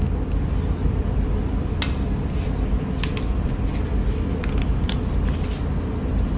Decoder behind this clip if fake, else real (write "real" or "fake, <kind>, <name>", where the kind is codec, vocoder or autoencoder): real